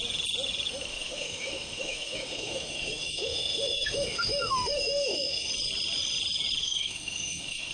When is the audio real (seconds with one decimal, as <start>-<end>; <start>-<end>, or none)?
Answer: 0.0-0.9; 5.5-6.6